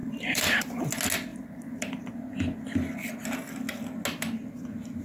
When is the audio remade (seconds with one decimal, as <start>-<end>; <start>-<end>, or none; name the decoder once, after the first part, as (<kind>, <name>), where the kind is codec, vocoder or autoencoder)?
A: 0.0-0.9 (vocoder, BigVGAN v2); 1.3-2.1